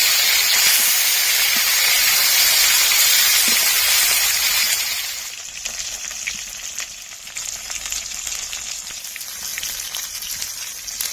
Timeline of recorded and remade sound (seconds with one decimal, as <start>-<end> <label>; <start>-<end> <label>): 0.0-11.1 recorded